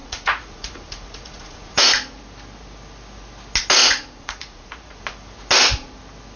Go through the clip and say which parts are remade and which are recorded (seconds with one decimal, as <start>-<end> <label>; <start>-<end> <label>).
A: 0.0-1.8 remade; 1.8-3.8 recorded; 3.8-5.0 remade; 5.0-6.4 recorded